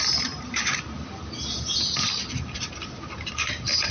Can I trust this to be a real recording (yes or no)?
no